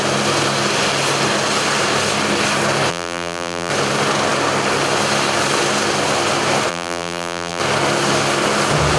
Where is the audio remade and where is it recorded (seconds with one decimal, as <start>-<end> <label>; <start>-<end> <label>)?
0.0-2.9 recorded; 2.9-3.7 remade; 3.7-6.7 recorded; 6.7-7.6 remade; 7.6-9.0 recorded